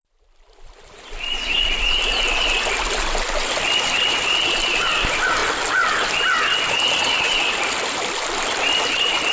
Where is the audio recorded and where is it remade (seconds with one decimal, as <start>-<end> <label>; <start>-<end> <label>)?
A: 0.0-9.3 recorded